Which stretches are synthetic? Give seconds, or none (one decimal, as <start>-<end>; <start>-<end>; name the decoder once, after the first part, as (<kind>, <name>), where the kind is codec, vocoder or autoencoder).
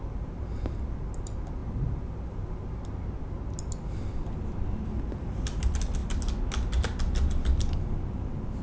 none